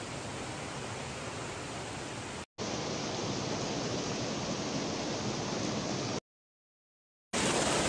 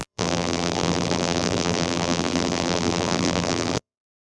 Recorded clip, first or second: first